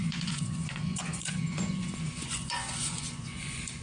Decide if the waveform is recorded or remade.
remade